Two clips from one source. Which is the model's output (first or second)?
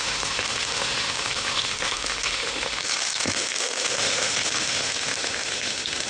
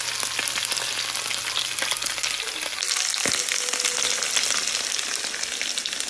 first